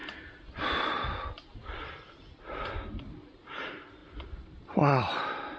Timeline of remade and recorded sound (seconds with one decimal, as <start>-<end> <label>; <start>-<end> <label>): 0.0-0.5 remade; 0.5-4.0 recorded; 4.0-5.6 remade